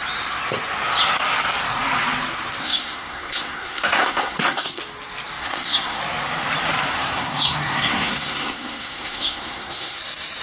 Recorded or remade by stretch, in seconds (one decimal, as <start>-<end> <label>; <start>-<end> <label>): 0.0-2.6 recorded; 2.6-4.8 remade; 4.8-5.4 recorded; 5.4-6.0 remade; 6.0-6.9 recorded; 6.9-10.0 remade; 10.0-10.4 recorded